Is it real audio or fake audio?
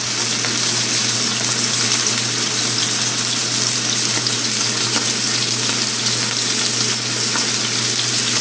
real